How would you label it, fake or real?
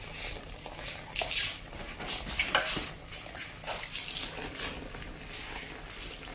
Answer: real